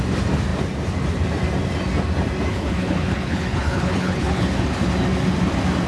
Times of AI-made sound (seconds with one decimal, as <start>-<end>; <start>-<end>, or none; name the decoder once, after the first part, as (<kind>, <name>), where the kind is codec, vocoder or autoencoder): 2.5-4.5 (codec, HILCodec)